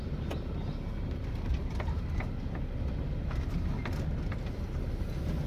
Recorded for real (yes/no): yes